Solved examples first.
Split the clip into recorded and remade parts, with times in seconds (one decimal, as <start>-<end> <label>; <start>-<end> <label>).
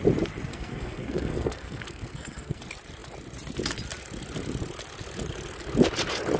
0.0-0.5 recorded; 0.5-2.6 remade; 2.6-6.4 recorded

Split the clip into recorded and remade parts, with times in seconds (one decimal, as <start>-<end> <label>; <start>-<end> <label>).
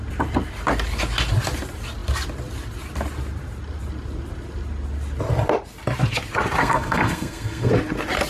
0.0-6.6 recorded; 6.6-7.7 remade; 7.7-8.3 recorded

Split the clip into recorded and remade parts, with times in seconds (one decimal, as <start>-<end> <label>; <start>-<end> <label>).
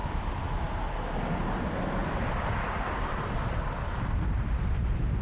0.0-2.0 recorded; 2.0-5.2 remade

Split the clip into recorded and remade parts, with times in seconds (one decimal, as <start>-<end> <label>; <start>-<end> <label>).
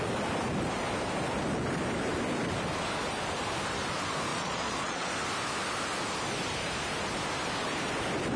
0.0-4.3 recorded; 4.3-5.1 remade; 5.1-8.4 recorded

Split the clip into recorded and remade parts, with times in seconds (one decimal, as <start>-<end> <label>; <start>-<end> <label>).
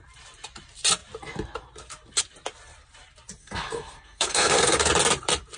0.0-3.4 recorded; 3.4-4.9 remade; 4.9-5.6 recorded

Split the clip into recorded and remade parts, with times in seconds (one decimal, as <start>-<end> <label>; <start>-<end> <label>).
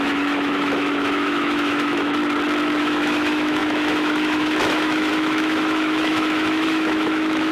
0.0-2.2 remade; 2.2-2.8 recorded; 2.8-7.5 remade